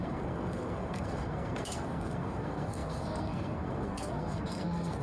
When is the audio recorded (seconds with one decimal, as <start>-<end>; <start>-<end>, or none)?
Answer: none

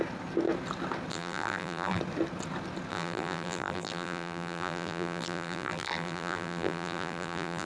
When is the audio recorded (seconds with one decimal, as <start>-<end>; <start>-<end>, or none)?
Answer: 0.0-1.1; 2.0-2.9

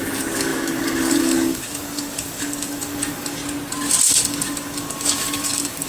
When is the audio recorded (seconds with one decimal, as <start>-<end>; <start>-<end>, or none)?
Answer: 3.4-4.1

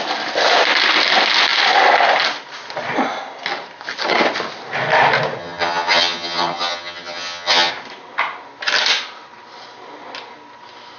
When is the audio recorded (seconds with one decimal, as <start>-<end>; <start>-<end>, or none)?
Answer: 0.0-5.4; 7.7-11.0

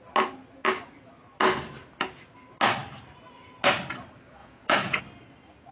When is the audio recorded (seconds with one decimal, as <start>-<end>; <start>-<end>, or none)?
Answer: 0.0-4.4; 5.0-5.7

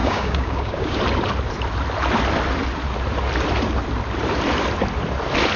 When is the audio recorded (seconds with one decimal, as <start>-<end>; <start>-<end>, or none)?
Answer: 1.0-5.6